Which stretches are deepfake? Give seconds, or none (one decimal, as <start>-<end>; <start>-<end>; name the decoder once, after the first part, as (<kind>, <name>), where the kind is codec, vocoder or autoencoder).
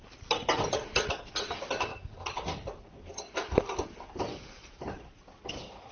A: none